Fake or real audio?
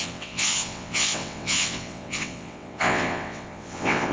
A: fake